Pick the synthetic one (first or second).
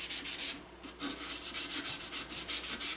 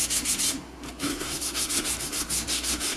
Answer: second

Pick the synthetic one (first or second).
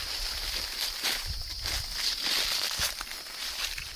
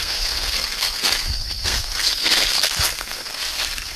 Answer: second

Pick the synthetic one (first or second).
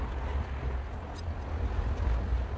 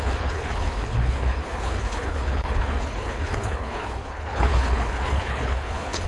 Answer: second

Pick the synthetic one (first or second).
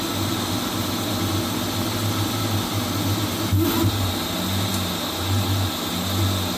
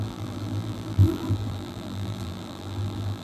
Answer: second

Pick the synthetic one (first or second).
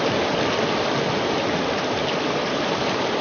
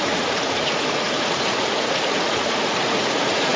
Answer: second